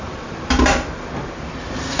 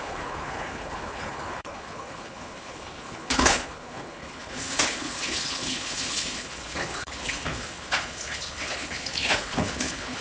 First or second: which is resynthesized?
second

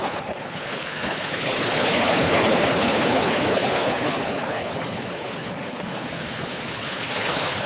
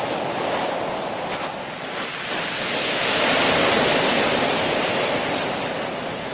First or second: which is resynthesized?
first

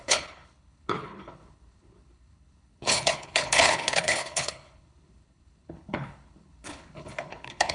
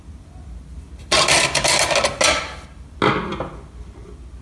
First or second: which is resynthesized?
first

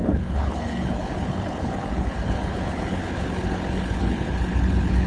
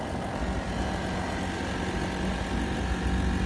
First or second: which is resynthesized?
first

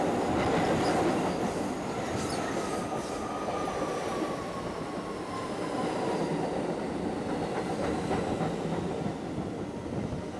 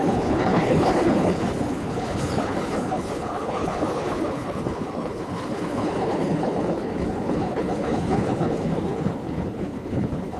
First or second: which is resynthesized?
second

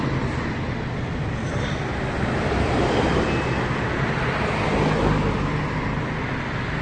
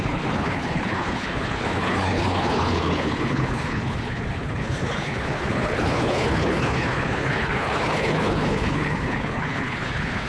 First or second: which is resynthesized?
second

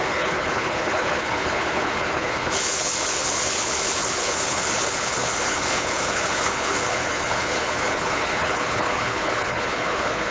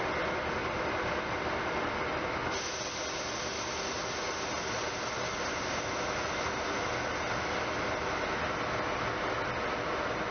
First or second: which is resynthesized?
first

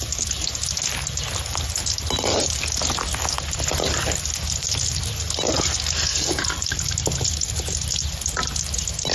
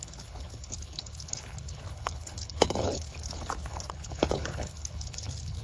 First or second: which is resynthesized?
second